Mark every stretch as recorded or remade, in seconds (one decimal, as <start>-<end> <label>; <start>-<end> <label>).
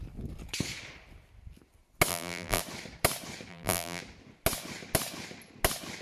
0.0-2.1 recorded; 2.1-2.6 remade; 2.6-3.5 recorded; 3.5-4.0 remade; 4.0-6.0 recorded